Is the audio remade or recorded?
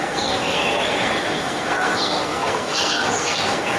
remade